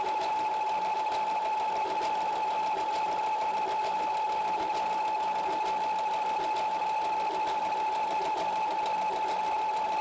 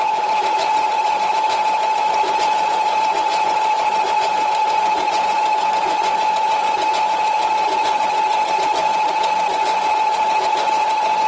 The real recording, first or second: first